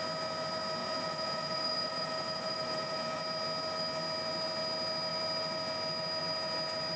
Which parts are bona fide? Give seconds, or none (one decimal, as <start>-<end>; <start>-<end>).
0.0-0.8; 3.2-7.0